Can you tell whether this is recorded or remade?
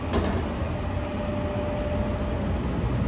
recorded